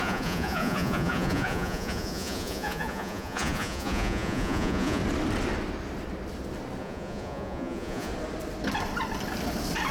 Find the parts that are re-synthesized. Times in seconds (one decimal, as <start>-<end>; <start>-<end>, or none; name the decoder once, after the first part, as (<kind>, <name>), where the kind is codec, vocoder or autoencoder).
0.0-5.0 (vocoder, Vocos); 6.8-8.1